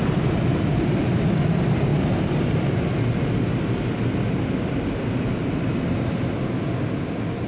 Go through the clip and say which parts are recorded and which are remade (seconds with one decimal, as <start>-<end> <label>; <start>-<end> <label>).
0.0-7.5 recorded